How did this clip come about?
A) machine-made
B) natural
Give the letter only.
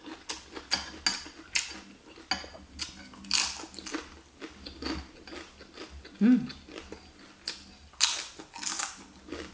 B